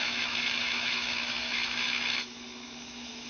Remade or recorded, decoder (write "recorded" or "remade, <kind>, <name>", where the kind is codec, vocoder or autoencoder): remade, autoencoder, DAC-VAE